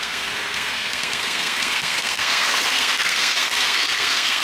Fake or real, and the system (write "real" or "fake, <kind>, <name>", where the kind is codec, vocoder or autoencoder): fake, codec, SNAC